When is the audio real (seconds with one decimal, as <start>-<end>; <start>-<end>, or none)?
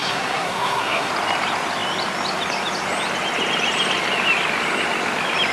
1.1-5.5